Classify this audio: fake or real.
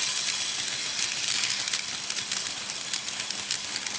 real